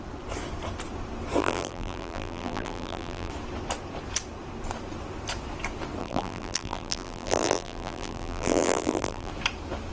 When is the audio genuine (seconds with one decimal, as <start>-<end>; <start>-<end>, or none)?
0.0-1.4; 3.3-6.0; 9.3-9.9